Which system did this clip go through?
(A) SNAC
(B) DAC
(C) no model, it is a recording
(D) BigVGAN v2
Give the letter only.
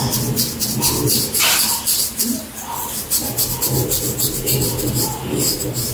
C